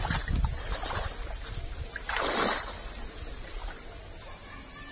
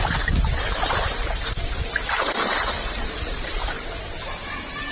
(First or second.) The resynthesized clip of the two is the second